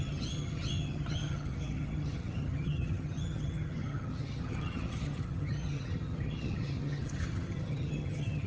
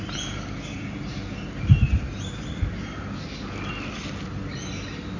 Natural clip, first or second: second